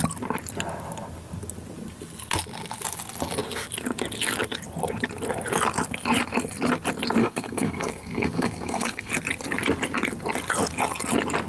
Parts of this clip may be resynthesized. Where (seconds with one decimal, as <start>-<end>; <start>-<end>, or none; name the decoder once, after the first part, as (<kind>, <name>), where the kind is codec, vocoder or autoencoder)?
7.2-9.1 (codec, SNAC)